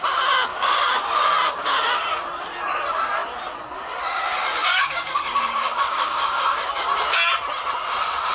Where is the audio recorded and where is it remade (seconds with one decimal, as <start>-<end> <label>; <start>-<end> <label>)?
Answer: 0.0-0.5 recorded; 0.5-1.0 remade; 1.0-1.4 recorded; 1.4-2.0 remade; 2.0-4.7 recorded; 4.7-6.7 remade; 6.7-8.3 recorded